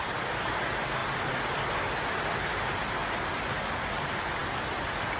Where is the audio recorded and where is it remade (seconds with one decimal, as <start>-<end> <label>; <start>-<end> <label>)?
0.0-5.2 recorded